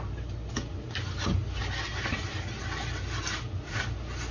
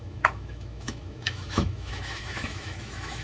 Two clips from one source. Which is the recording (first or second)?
first